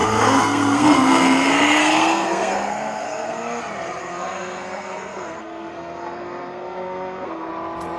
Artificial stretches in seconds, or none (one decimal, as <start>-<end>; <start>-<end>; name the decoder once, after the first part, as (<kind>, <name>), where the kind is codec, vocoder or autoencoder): 0.0-3.6 (codec, SNAC); 4.0-7.5